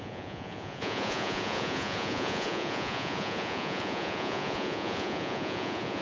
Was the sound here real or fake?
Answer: fake